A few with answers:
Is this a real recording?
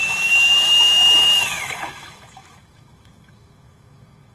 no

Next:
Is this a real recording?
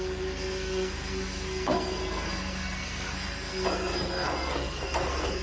no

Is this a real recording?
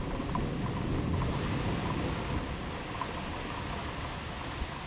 yes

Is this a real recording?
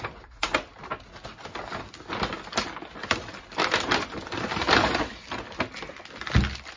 yes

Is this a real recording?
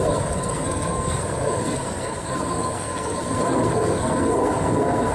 no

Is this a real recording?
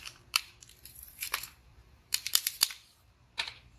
no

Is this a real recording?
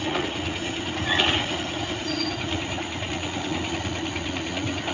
no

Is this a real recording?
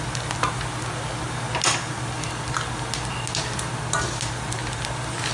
yes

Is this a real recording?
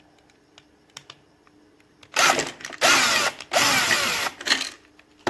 yes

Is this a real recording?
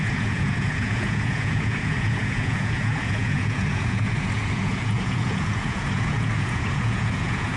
no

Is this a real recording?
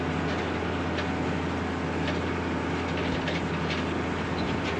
yes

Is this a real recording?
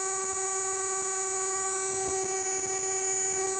yes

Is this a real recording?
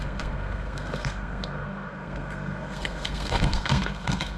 no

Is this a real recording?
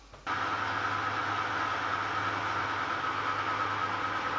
yes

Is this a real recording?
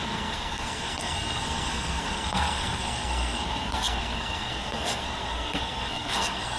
no